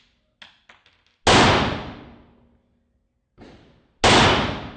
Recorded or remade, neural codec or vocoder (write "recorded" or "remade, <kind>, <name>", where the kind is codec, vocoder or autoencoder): recorded